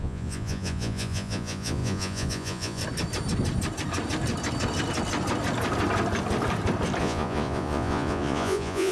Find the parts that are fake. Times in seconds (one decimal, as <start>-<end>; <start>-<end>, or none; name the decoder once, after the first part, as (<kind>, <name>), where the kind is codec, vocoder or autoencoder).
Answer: 0.0-2.8 (vocoder, Vocos); 7.0-8.9